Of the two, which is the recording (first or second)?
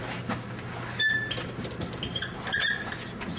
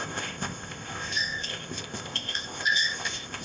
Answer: first